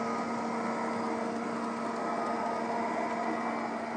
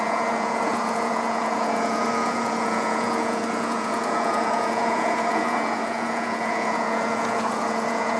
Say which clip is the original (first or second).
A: first